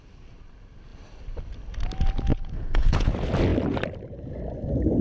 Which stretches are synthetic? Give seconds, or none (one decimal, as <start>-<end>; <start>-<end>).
2.3-3.1